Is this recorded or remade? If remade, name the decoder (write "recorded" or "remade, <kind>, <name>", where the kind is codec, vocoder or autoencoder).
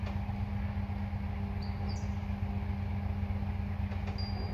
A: recorded